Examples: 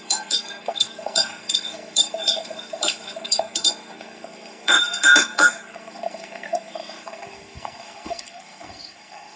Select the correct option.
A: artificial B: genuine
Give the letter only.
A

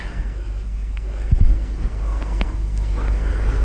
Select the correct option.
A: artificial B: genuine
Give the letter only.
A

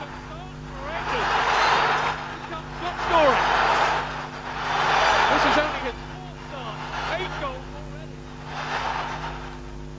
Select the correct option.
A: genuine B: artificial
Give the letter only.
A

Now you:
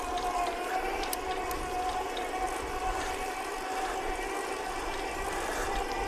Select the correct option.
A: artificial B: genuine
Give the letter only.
B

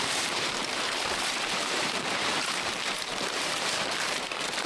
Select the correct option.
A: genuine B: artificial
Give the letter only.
B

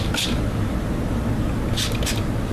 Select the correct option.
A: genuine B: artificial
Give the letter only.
A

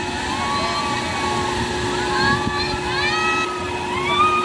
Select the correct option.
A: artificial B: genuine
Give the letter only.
B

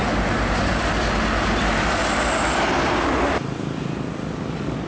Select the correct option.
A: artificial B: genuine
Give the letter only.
B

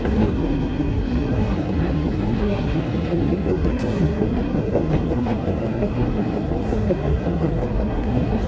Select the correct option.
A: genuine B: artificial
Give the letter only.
B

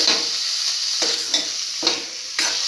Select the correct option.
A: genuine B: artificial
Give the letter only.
A